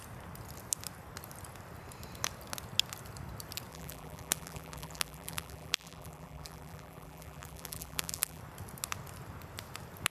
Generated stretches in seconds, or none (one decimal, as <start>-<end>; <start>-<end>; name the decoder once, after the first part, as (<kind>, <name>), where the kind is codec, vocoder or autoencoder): 3.7-8.4 (vocoder, BigVGAN v2)